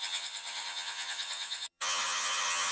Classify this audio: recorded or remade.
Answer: remade